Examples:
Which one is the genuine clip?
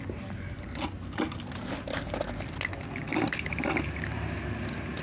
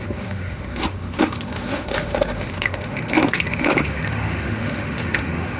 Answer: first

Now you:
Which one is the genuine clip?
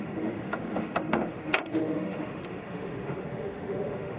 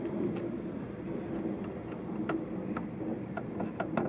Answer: second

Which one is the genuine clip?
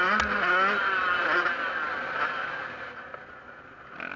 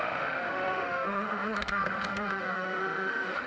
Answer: first